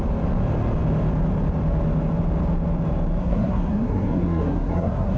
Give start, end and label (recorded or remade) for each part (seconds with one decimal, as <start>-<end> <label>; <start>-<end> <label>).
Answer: 0.0-3.2 recorded; 3.2-5.2 remade